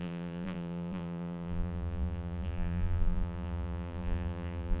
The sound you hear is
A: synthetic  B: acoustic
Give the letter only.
A